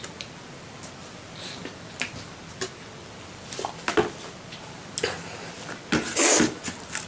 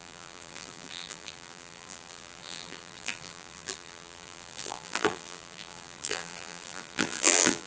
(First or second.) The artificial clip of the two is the second